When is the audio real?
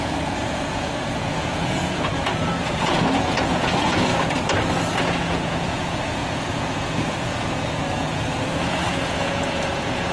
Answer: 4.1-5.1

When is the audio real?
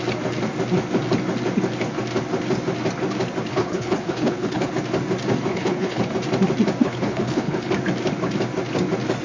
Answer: 0.0-3.5; 4.7-5.5; 6.0-6.8; 7.7-9.2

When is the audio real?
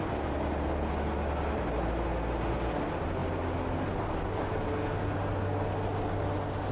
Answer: 0.0-6.7